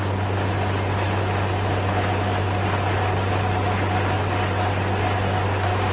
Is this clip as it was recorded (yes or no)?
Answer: yes